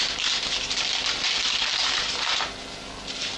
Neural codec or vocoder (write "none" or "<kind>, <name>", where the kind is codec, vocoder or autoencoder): none